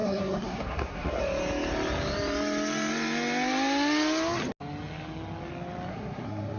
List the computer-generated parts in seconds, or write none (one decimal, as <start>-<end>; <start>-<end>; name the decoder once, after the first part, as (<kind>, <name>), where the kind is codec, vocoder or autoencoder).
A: 0.0-1.2 (codec, SNAC); 5.9-6.6